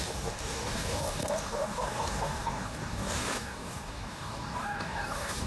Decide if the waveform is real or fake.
fake